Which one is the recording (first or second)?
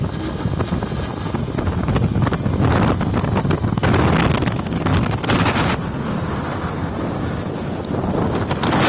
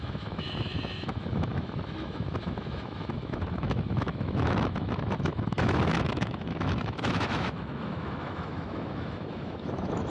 first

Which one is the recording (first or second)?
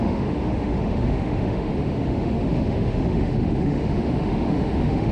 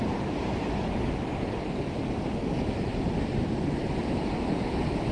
second